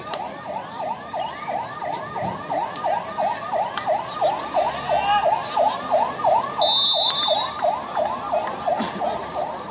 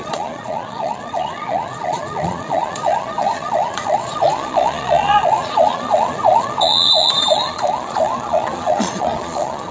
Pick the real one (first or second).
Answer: first